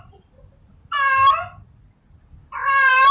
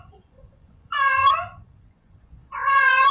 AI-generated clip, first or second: second